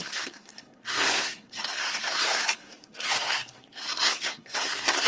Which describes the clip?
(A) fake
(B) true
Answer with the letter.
A